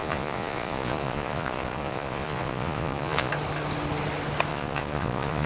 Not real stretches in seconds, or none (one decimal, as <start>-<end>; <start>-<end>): 0.0-3.3; 4.5-5.5